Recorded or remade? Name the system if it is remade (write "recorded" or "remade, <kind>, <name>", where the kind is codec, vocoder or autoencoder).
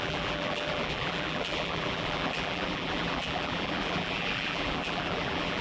remade, vocoder, BigVGAN v2